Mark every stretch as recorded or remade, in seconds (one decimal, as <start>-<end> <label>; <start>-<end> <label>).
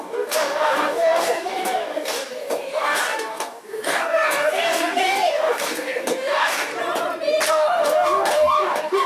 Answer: 0.0-6.7 remade; 6.7-7.5 recorded; 7.5-9.1 remade